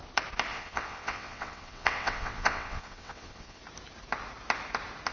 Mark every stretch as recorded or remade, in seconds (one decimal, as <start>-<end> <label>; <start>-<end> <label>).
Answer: 0.0-0.5 recorded; 0.5-3.6 remade; 3.6-5.1 recorded